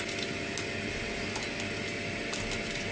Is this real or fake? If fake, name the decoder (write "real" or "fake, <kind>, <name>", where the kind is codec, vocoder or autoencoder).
real